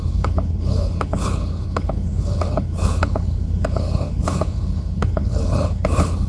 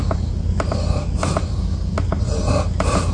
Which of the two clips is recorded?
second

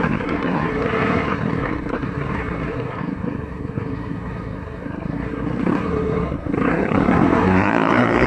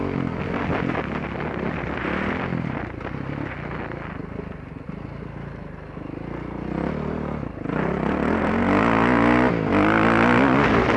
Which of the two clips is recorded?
second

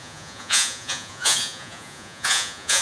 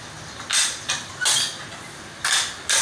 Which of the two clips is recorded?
second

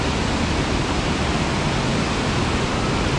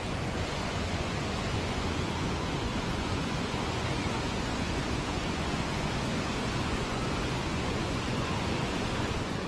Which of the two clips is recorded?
first